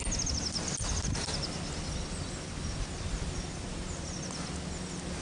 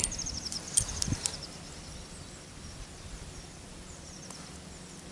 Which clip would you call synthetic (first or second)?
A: second